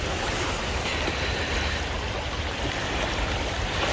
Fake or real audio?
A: real